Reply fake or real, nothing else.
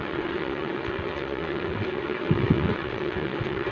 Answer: fake